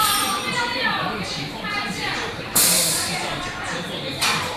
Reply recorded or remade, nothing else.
remade